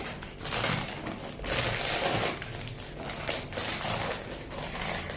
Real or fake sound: real